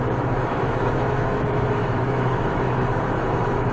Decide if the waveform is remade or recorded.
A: remade